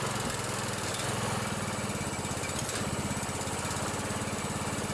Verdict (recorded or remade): recorded